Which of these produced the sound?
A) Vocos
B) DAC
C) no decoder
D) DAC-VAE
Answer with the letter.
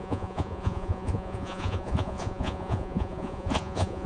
A